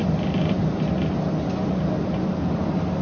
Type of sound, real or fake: real